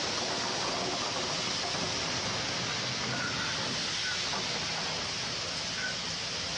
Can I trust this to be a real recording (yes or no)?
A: yes